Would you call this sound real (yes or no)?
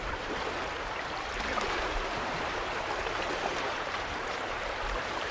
no